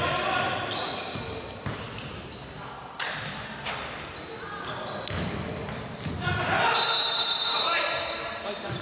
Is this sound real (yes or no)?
yes